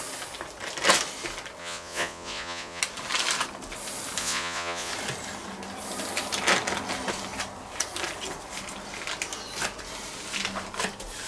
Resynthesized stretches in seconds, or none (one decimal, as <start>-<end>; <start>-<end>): 1.6-2.8; 4.2-4.9